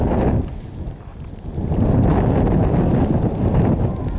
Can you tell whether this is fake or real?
real